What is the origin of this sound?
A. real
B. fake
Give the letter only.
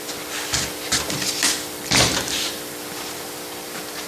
A